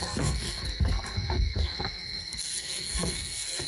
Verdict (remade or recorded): remade